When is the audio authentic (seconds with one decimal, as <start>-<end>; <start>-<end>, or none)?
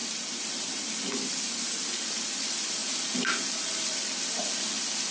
0.0-5.1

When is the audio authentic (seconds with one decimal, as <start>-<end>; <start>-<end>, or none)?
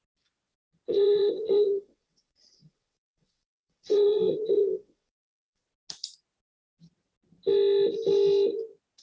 0.0-0.9; 5.6-9.0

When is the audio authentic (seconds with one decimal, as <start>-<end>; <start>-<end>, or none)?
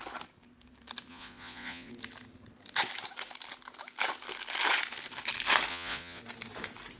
0.0-1.1; 1.9-5.7; 6.2-7.0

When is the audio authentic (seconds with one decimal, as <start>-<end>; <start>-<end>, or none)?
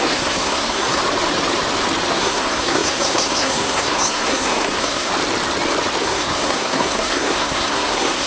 1.0-2.1; 5.1-6.0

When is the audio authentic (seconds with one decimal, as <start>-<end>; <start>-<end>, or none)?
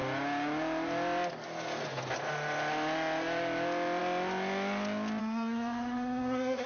0.0-5.2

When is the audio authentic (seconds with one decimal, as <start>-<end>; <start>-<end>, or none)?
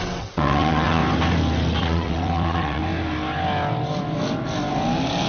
1.0-1.8; 2.8-5.3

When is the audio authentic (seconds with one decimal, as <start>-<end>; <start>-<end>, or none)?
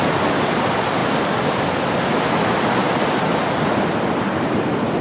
0.0-5.0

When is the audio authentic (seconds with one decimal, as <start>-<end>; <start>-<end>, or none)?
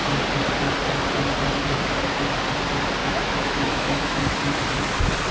0.0-3.0; 4.2-5.3